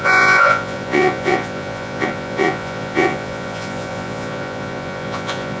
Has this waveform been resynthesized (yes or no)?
yes